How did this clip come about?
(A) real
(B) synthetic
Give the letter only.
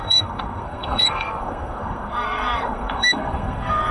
B